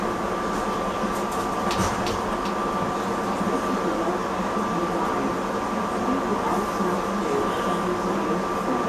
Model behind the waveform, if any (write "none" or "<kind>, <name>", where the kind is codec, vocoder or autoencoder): none